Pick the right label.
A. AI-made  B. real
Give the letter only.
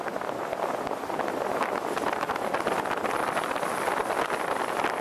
B